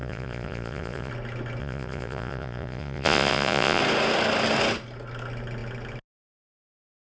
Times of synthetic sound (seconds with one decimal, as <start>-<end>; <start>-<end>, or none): 0.0-1.1; 1.6-3.8